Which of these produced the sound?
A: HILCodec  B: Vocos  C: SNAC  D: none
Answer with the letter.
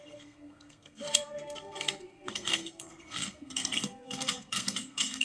C